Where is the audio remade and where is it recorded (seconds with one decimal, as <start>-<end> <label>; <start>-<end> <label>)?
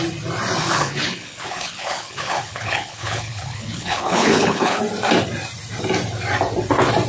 0.0-0.6 recorded; 0.6-4.8 remade; 4.8-7.1 recorded